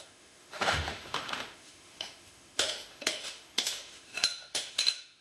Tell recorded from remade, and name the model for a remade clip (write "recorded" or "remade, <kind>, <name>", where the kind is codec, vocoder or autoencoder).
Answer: remade, autoencoder, DAC-VAE